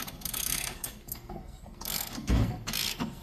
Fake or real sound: fake